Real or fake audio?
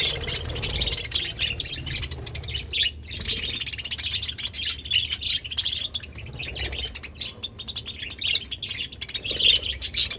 real